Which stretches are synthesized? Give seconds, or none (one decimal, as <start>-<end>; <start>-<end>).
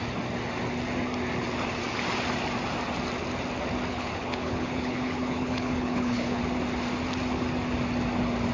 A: 3.9-6.4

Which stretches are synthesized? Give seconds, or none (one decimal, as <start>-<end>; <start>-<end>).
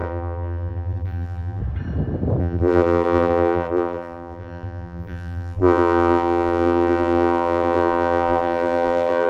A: 0.0-1.6; 2.4-9.3